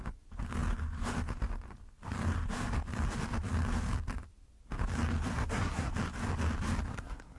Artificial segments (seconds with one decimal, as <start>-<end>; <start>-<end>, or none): 5.3-5.9; 6.9-7.4